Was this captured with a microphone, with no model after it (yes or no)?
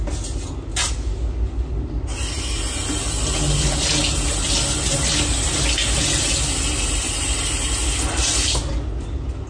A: yes